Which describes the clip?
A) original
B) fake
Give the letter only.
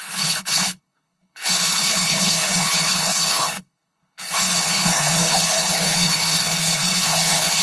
B